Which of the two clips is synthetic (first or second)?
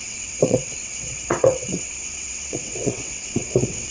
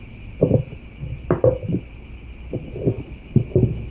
first